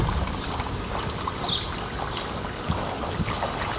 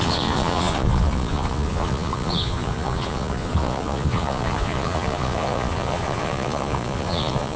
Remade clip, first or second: second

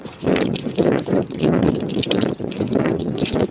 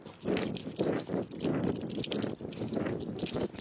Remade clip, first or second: first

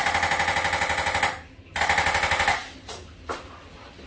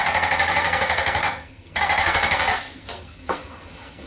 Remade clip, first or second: second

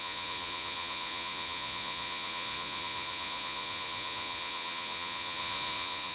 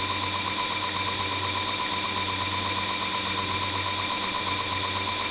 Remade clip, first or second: first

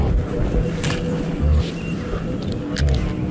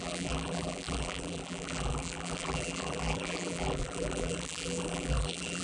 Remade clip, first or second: second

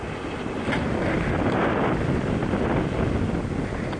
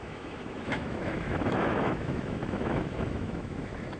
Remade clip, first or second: second